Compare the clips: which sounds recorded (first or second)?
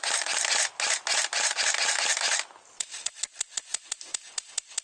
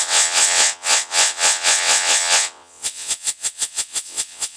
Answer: first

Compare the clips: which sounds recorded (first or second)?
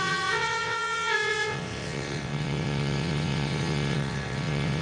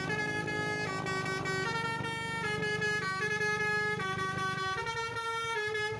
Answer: second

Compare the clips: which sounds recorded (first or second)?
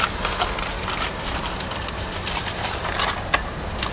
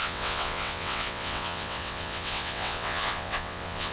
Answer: first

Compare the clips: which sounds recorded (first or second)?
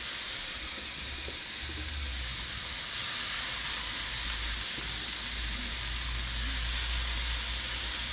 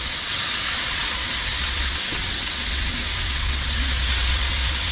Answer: first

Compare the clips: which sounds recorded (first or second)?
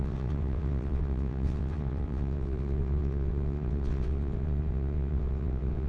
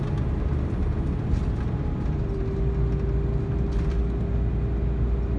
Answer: second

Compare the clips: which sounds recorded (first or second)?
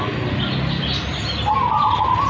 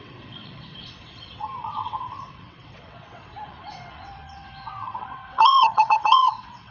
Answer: first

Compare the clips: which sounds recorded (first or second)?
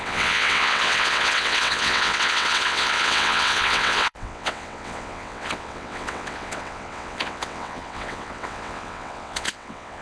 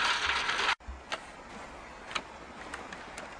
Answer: second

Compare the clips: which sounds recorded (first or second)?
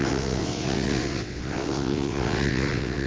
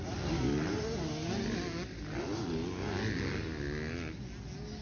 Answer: second